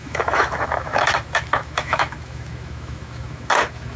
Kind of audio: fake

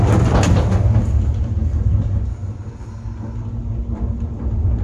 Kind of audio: real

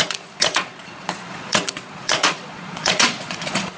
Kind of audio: fake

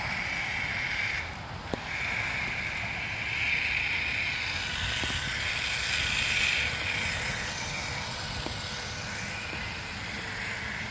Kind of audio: real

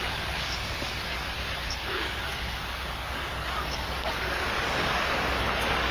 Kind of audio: fake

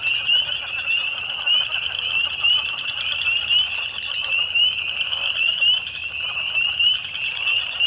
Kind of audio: real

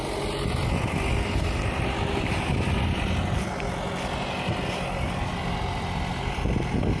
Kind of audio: real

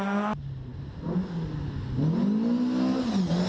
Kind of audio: real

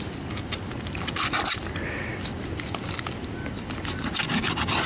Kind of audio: real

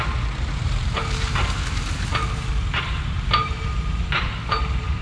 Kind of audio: fake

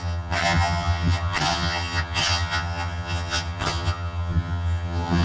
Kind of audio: fake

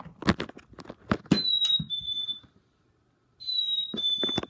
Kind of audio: real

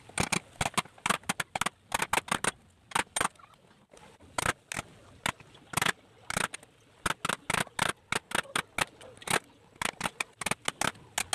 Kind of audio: real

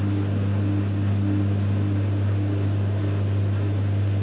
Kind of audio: real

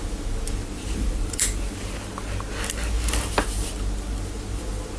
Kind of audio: real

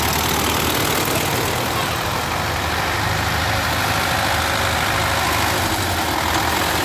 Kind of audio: real